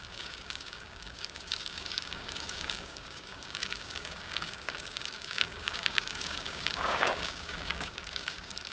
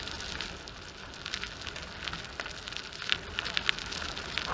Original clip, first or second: second